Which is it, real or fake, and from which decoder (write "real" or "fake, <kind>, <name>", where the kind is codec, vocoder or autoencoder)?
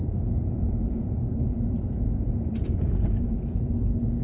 fake, vocoder, Vocos